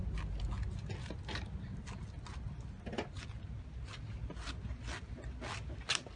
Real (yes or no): yes